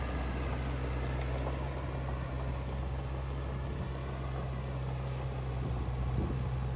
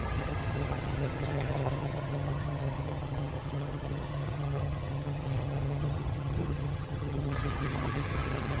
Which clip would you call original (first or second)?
first